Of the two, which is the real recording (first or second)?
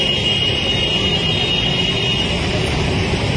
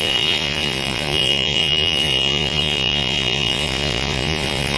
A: first